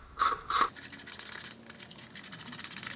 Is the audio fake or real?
real